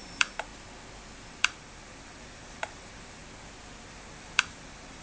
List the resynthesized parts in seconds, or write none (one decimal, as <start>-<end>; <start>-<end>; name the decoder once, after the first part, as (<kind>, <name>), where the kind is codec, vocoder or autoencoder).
0.0-0.5 (vocoder, BigVGAN v2); 1.3-3.2; 3.9-5.0